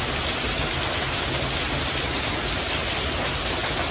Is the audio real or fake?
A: real